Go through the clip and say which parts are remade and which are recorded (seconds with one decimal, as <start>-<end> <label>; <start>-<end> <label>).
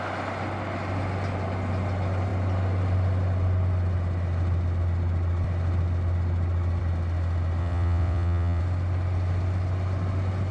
0.0-7.6 recorded; 7.6-8.6 remade; 8.6-10.5 recorded